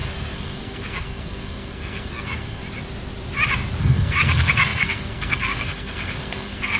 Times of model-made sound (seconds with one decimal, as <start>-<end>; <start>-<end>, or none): 0.0-2.6; 3.8-6.8